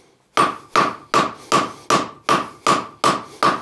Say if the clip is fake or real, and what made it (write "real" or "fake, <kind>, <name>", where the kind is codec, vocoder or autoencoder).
real